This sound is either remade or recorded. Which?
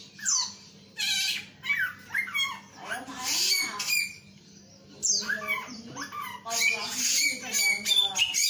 recorded